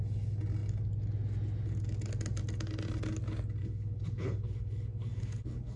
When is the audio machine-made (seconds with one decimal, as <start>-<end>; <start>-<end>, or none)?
3.6-5.8